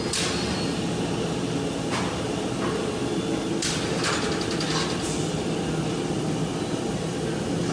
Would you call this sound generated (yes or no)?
no